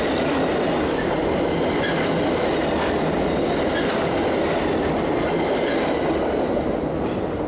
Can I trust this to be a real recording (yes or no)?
yes